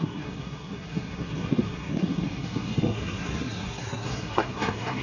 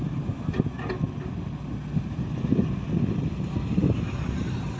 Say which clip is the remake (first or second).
first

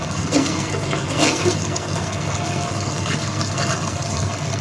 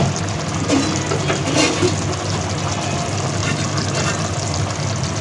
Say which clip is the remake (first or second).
first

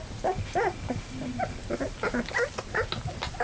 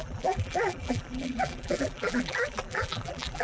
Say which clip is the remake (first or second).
second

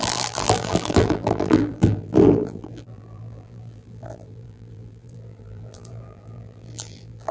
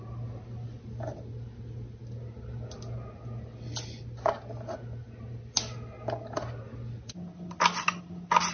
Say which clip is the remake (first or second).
first